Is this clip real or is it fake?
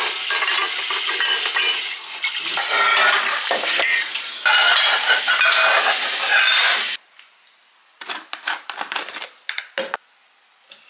real